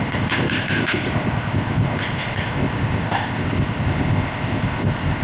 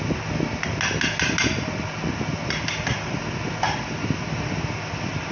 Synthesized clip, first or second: first